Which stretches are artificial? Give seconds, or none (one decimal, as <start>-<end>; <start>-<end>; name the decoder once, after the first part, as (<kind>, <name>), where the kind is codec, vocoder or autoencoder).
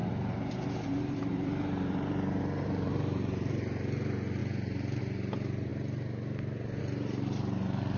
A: 0.0-3.6 (vocoder, BigVGAN v2)